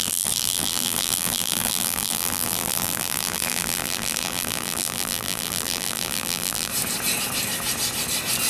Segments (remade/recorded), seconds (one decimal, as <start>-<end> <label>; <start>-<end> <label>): 0.0-6.7 remade; 6.7-8.5 recorded